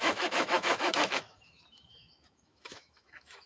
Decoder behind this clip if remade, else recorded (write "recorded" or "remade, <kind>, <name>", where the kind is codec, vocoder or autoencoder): remade, autoencoder, DAC-VAE